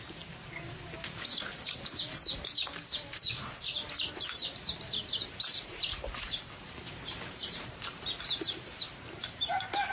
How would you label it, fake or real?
fake